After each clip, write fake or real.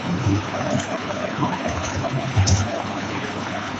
fake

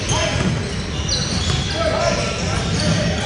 real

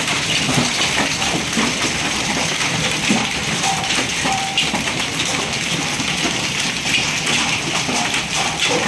fake